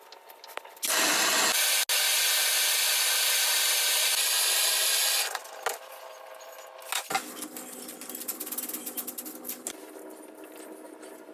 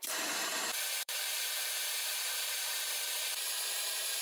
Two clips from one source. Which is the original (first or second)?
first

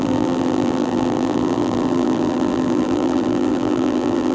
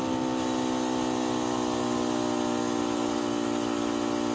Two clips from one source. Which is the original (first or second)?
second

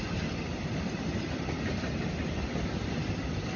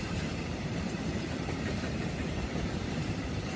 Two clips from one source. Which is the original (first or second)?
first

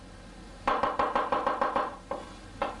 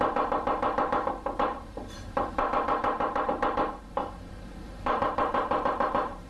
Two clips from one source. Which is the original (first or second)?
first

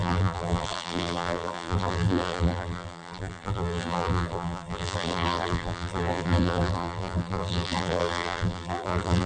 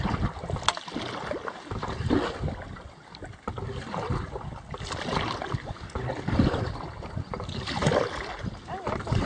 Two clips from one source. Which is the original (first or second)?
second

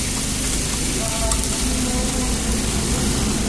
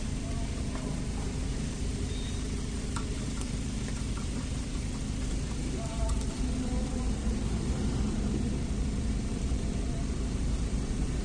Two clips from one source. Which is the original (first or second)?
first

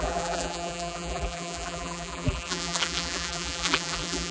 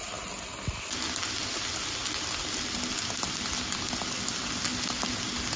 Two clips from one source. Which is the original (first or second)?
second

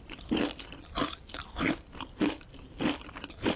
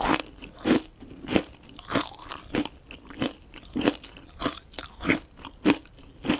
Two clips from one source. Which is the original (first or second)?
second